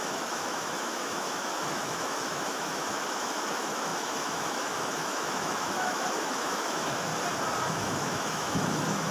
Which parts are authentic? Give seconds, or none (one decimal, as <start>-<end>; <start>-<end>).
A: 7.1-7.7